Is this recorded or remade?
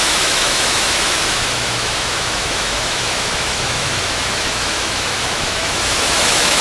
remade